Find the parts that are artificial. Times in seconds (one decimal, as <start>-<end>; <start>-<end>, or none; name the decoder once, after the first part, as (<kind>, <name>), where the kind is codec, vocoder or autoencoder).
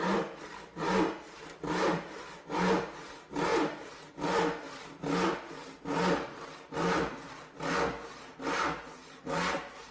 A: none